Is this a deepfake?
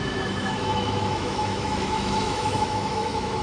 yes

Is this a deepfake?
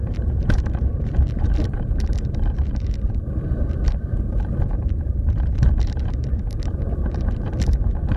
yes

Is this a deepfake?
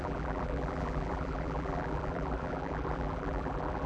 yes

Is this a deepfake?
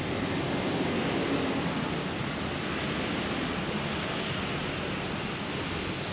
no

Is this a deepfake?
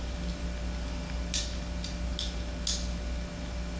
no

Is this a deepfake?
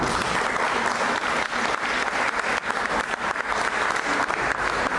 no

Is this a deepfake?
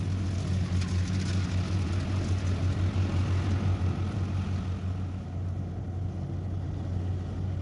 no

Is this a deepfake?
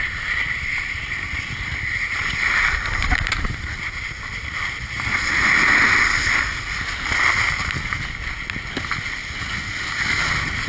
no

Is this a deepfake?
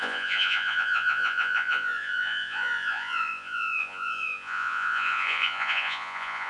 yes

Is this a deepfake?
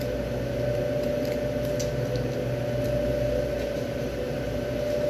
no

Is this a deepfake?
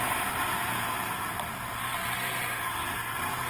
no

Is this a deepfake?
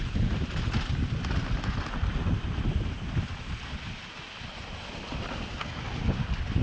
no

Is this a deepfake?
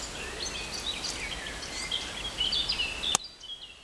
no